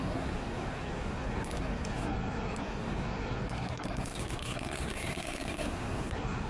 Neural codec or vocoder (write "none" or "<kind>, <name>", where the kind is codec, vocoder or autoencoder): codec, SNAC